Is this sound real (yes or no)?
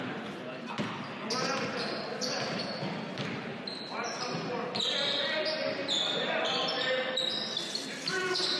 yes